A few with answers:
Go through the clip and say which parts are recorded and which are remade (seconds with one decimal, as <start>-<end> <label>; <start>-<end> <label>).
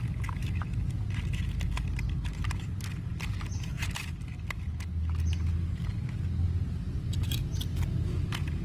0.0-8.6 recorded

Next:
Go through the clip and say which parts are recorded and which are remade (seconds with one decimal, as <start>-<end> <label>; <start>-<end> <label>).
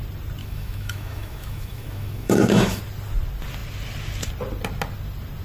0.0-0.4 recorded; 0.4-2.8 remade; 2.8-5.4 recorded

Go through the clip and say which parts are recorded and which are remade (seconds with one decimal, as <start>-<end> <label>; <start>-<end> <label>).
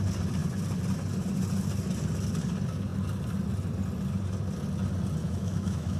0.0-5.2 recorded; 5.2-6.0 remade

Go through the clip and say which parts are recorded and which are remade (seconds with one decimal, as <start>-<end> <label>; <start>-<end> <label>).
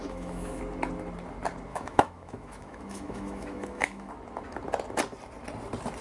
0.0-0.6 remade; 0.6-1.7 recorded; 1.7-4.1 remade; 4.1-6.0 recorded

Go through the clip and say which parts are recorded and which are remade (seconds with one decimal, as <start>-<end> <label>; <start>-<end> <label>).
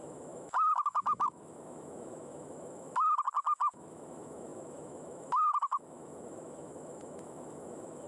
0.0-8.1 remade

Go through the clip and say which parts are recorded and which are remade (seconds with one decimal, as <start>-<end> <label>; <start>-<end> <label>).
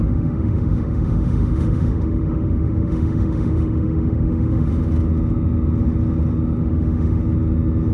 0.0-4.7 remade; 4.7-6.6 recorded; 6.6-7.2 remade; 7.2-7.9 recorded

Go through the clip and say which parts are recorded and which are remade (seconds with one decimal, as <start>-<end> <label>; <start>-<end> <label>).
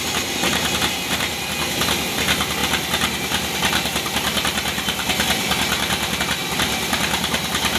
0.0-7.8 recorded